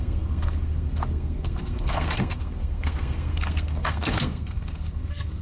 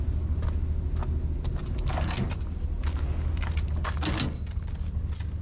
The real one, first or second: second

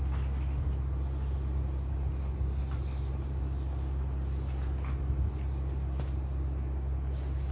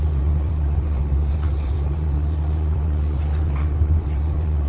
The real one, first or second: first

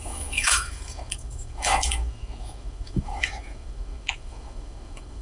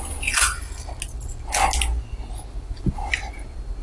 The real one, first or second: second